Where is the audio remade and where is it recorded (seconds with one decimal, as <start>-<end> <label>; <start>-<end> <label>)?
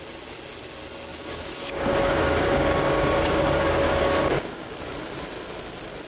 0.0-1.1 recorded; 1.1-4.7 remade; 4.7-6.1 recorded